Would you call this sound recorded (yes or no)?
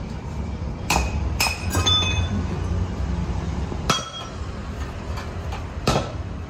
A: no